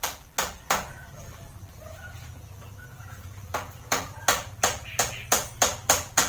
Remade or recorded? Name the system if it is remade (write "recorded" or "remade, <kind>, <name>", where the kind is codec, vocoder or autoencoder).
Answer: remade, vocoder, BigVGAN v2